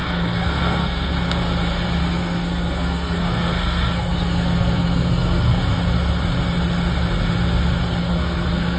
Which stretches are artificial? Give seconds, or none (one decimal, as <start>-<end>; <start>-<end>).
0.0-1.1; 2.0-5.6; 8.0-8.8